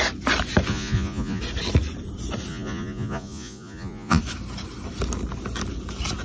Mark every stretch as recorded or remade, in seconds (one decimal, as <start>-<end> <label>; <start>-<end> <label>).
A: 0.0-0.7 recorded; 0.7-1.4 remade; 1.4-2.5 recorded; 2.5-4.2 remade; 4.2-6.2 recorded